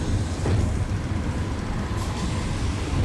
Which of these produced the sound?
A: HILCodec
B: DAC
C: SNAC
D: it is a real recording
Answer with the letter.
D